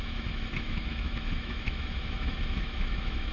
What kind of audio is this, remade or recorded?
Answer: remade